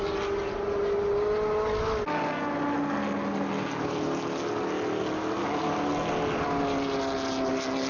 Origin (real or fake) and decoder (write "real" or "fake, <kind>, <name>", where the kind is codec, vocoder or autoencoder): real